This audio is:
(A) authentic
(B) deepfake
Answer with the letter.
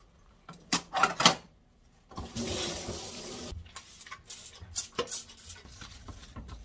A